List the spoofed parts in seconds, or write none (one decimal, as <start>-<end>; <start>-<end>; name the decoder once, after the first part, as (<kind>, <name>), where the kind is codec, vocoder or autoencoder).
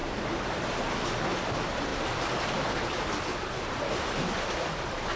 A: none